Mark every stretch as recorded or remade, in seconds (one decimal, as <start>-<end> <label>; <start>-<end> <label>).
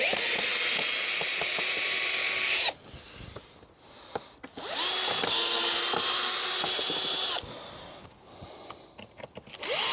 0.0-9.9 recorded